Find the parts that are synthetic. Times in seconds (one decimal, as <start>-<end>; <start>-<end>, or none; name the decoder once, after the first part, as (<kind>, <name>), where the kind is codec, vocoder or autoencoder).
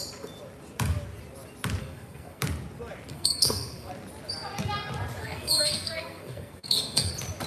1.8-2.4 (codec, SNAC); 3.1-3.9; 5.2-7.1